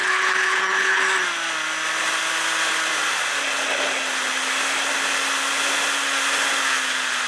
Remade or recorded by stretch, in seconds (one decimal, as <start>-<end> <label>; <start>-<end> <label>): 0.0-1.0 remade; 1.0-7.3 recorded